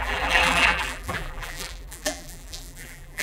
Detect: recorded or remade remade